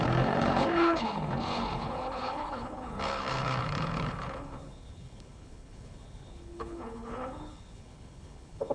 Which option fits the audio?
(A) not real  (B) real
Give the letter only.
A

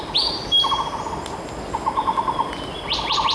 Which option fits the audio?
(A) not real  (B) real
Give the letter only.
B